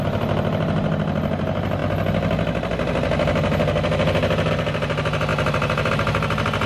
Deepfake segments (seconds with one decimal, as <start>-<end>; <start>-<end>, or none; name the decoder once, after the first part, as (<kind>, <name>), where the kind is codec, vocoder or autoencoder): none